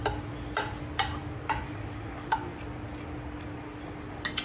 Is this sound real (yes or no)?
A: yes